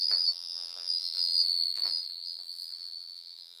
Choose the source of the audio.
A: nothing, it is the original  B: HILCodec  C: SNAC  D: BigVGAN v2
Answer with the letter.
D